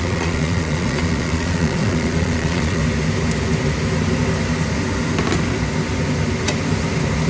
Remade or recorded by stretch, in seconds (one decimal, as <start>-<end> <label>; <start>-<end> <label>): 0.0-2.8 remade; 2.8-7.3 recorded